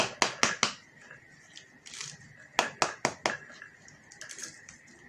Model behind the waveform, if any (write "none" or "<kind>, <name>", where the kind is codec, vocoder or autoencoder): none